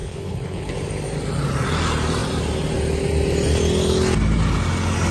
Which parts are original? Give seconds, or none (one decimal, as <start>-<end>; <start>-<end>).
0.7-5.1